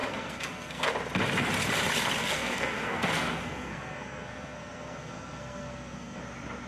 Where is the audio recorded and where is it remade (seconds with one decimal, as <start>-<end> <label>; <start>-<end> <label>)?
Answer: 0.0-0.9 remade; 0.9-2.2 recorded; 2.2-6.2 remade; 6.2-6.7 recorded